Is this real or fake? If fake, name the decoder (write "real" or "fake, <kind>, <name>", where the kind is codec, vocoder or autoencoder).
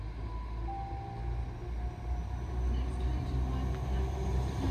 real